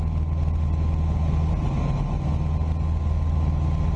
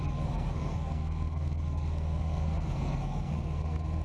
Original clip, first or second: first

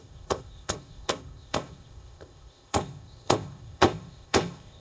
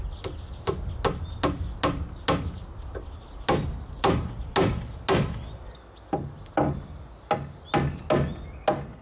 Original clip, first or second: second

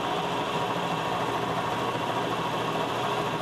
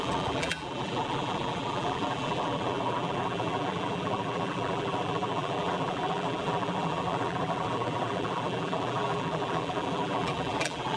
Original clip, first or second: first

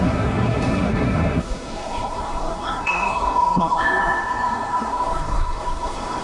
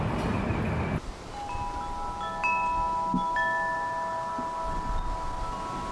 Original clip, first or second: second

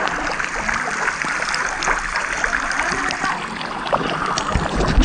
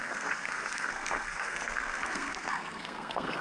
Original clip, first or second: first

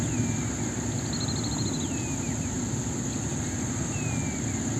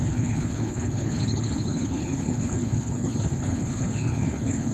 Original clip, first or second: first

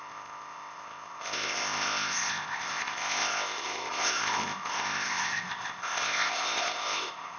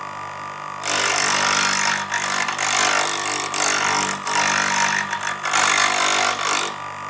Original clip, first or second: second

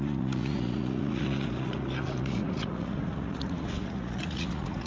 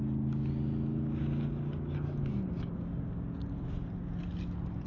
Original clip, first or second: second